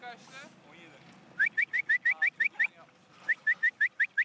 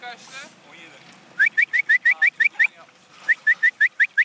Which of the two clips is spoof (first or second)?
second